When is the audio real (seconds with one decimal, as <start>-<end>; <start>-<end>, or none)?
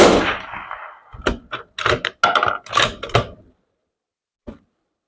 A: 0.0-5.1